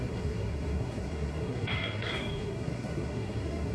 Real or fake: fake